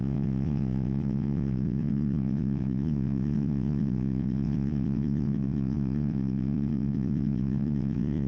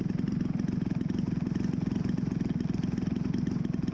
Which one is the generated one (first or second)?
first